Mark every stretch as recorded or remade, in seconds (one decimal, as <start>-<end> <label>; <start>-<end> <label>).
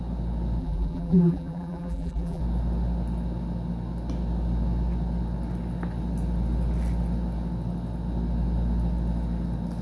0.0-0.6 recorded; 0.6-2.4 remade; 2.4-9.8 recorded